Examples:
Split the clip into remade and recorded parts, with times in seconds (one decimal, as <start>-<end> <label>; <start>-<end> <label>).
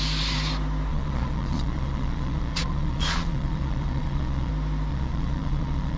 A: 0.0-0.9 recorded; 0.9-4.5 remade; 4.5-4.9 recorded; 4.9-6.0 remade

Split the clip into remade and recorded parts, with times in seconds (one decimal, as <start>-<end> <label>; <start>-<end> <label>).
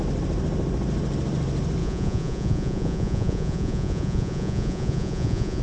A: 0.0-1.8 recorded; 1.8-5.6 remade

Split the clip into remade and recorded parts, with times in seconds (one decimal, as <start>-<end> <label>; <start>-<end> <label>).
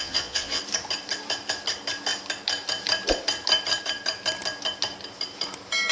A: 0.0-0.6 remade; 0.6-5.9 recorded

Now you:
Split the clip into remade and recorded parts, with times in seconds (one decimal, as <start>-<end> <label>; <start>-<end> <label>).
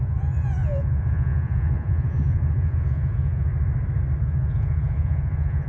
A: 0.0-3.5 remade; 3.5-4.2 recorded; 4.2-5.7 remade